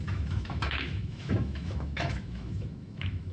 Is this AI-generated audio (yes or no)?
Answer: yes